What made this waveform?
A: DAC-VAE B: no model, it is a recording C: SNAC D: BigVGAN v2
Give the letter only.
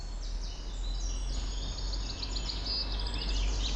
B